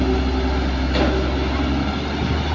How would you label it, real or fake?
real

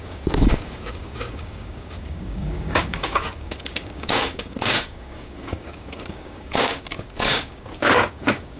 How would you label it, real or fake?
fake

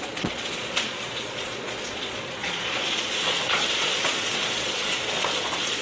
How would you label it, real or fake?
fake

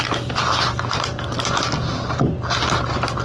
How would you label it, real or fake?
real